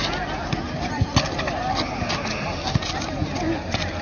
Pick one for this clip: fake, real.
real